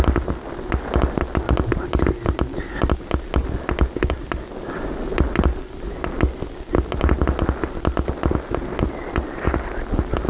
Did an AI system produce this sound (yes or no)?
no